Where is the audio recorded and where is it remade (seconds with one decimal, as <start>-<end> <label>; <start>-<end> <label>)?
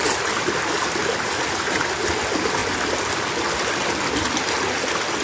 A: 0.0-5.2 recorded